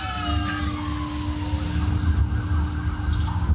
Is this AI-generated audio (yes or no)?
no